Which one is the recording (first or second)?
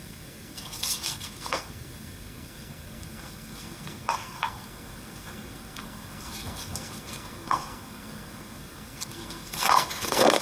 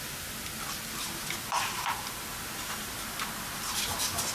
second